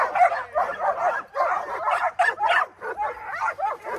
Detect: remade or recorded recorded